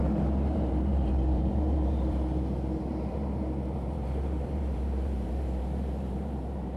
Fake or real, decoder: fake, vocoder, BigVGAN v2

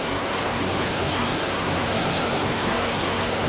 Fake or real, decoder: fake, codec, SNAC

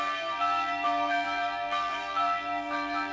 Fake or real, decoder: fake, vocoder, BigVGAN v2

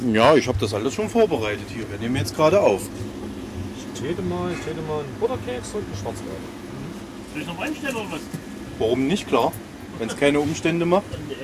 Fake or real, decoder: real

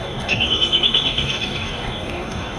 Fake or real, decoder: fake, codec, DAC